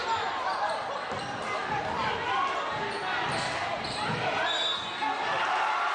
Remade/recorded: recorded